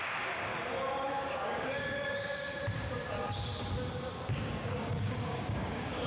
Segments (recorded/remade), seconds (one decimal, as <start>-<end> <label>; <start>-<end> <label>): 0.0-0.5 remade; 0.5-1.1 recorded; 1.1-2.5 remade; 2.5-4.3 recorded; 4.3-6.1 remade